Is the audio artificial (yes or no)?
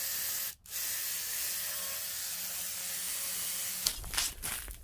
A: no